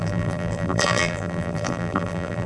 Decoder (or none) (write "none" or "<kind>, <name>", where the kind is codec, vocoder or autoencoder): vocoder, BigVGAN v2